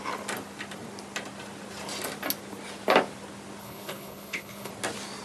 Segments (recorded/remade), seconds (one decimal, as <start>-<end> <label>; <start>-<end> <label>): 0.0-3.6 recorded; 3.6-4.7 remade; 4.7-5.2 recorded